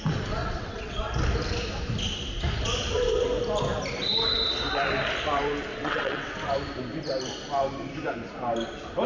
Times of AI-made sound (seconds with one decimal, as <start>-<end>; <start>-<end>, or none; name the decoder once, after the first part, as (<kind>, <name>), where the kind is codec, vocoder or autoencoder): 0.4-1.1 (vocoder, WaveNeXt); 5.7-6.3